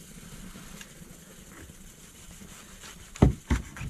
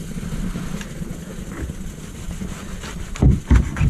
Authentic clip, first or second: second